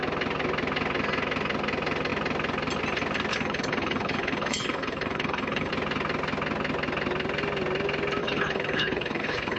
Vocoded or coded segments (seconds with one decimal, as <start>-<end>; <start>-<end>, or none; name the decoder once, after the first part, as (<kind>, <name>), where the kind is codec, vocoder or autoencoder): 3.3-5.7 (codec, HILCodec); 8.2-9.6